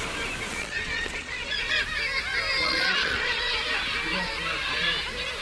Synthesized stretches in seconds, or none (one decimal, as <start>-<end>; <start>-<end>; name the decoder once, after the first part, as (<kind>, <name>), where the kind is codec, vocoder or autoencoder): 0.5-1.8 (vocoder, Vocos); 2.6-3.5